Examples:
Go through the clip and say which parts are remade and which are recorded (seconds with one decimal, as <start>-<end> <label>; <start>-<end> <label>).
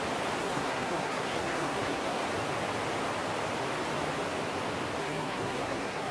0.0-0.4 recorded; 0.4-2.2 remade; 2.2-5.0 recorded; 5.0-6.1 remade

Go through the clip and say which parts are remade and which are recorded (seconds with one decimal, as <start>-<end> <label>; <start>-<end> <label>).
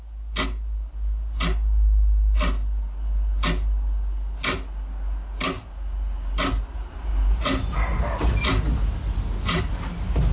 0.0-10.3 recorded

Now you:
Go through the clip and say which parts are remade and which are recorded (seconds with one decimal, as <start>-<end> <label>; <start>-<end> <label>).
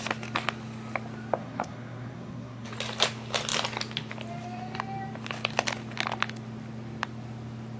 0.0-1.4 recorded; 1.4-2.7 remade; 2.7-7.8 recorded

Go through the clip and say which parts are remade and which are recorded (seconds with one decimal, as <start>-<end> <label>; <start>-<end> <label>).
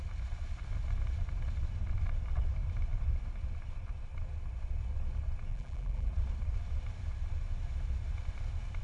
0.0-5.5 recorded; 5.5-6.1 remade; 6.1-8.8 recorded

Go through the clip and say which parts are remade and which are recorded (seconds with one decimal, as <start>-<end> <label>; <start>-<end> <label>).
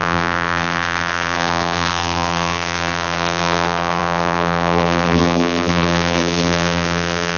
0.0-7.4 remade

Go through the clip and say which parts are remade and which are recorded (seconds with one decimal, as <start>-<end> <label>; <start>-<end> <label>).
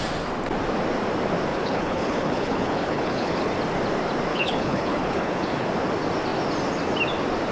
0.0-1.5 recorded; 1.5-3.5 remade; 3.5-4.3 recorded; 4.3-5.7 remade; 5.7-7.5 recorded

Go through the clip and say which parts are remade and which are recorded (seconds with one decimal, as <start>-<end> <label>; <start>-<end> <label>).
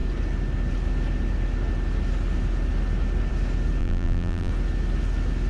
0.0-3.8 recorded; 3.8-4.5 remade; 4.5-5.5 recorded